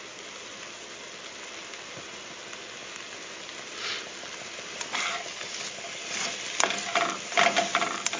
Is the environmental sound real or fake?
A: real